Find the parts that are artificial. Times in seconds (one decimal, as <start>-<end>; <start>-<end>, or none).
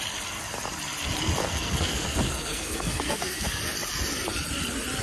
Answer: 1.4-3.6